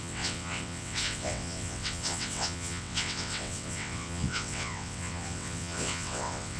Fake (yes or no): yes